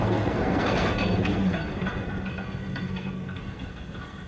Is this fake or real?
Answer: fake